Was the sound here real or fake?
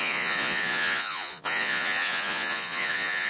fake